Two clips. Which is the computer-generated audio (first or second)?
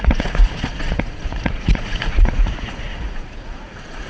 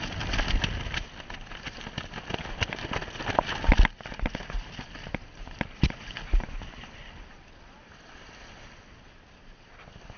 first